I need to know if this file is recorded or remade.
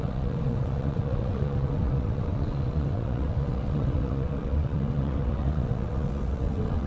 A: remade